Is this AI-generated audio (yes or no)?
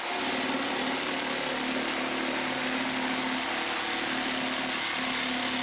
no